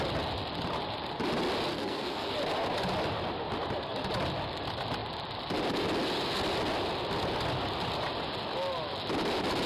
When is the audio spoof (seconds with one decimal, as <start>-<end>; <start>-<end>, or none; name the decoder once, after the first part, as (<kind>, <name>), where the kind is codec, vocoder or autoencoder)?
1.7-2.3 (codec, SNAC)